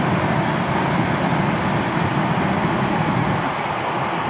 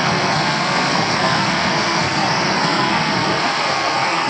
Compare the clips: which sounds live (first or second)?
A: first